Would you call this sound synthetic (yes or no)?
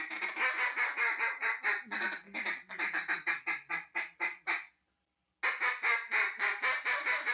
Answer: no